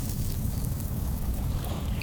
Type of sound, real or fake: fake